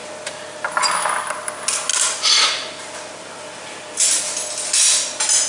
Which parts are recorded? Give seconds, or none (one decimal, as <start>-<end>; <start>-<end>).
0.0-5.5